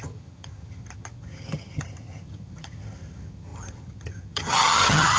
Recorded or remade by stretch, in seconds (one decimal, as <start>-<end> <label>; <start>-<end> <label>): 0.0-5.2 remade